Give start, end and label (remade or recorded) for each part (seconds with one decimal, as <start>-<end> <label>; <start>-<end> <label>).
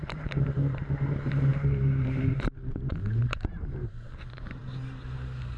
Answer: 0.0-4.6 remade; 4.6-5.6 recorded